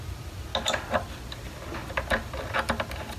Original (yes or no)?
yes